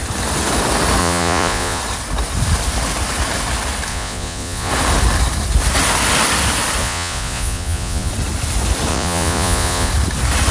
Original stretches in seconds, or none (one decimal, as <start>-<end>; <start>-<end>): 0.0-1.0; 1.8-3.9; 4.7-6.8; 8.1-8.9; 9.9-10.5